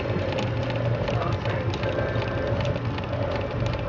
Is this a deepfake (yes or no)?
no